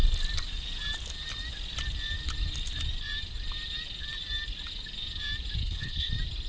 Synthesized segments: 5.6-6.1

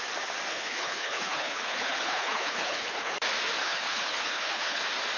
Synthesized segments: 0.5-3.1; 3.6-4.8

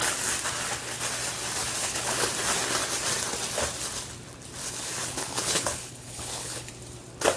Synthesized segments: 1.8-2.3; 4.6-6.7

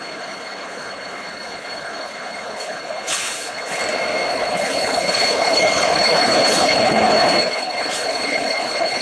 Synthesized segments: 0.0-3.8; 4.3-9.0

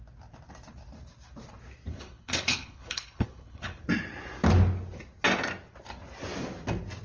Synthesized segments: 1.9-3.8

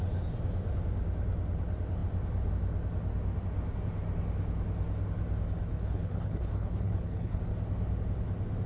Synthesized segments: 5.7-7.4

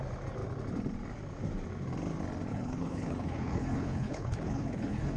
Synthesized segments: 2.5-5.2